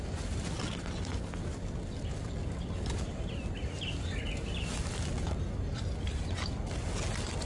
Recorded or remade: recorded